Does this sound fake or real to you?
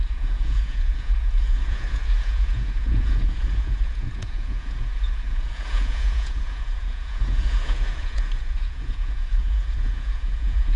fake